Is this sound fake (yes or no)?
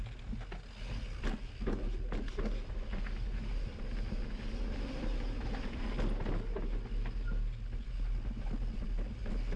no